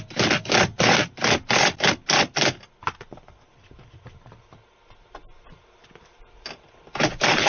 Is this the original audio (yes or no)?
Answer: yes